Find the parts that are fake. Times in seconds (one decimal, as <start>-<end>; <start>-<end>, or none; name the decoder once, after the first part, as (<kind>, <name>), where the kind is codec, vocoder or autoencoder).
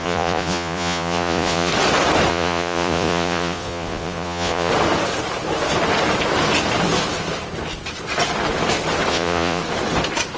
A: 0.0-1.7 (vocoder, Vocos); 2.3-4.7; 9.1-9.6